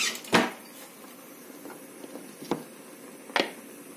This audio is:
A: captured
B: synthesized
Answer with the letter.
A